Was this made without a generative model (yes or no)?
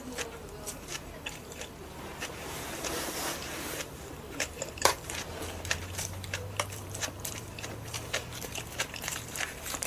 no